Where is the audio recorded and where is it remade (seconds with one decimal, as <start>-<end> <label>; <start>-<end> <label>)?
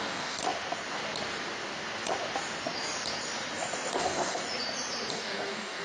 0.0-0.4 remade; 0.4-3.9 recorded; 3.9-4.4 remade; 4.4-5.1 recorded; 5.1-5.8 remade